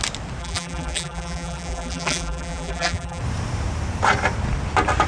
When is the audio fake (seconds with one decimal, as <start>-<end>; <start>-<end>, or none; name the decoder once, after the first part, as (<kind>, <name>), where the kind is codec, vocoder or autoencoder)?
0.4-3.2 (vocoder, BigVGAN v2)